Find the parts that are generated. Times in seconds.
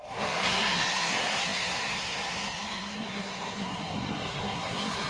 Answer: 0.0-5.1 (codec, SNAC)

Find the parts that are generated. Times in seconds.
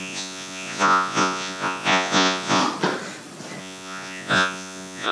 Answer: 0.0-2.6 (vocoder, Vocos); 3.6-5.1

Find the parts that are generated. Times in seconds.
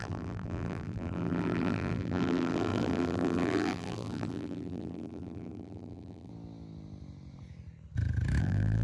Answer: 0.0-6.3 (vocoder, BigVGAN v2); 8.4-8.8